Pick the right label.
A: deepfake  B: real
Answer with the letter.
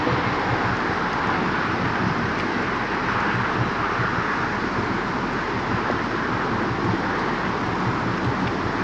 B